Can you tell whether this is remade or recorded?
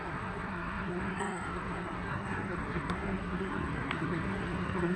remade